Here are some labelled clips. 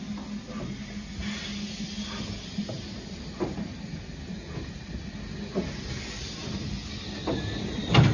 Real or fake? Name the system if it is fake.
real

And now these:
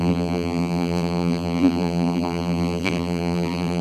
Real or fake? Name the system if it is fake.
fake, vocoder, BigVGAN v2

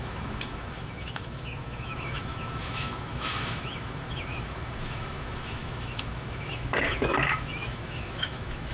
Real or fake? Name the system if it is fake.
fake, autoencoder, DAC-VAE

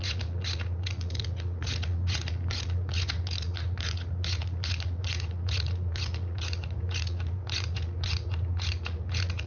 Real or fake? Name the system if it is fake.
fake, vocoder, Vocos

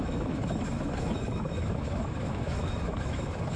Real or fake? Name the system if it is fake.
fake, autoencoder, DAC-VAE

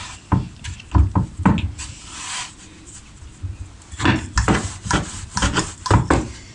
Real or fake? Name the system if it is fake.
real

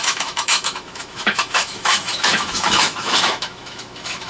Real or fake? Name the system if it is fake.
fake, autoencoder, DAC-VAE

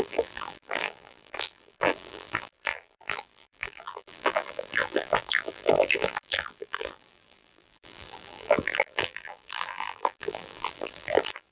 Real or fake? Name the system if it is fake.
fake, vocoder, BigVGAN v2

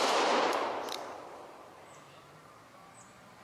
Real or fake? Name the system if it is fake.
fake, vocoder, BigVGAN v2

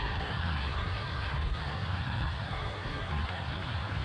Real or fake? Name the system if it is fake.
fake, codec, SNAC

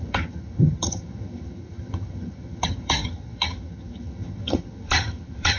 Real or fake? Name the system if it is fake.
fake, vocoder, HiFi-GAN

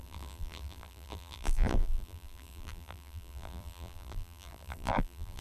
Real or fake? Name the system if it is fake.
fake, vocoder, BigVGAN v2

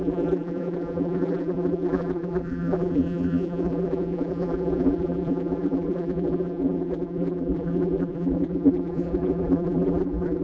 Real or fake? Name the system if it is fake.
fake, vocoder, BigVGAN v2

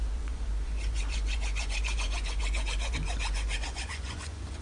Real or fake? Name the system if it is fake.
fake, vocoder, Vocos